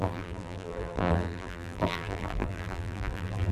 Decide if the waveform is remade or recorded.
remade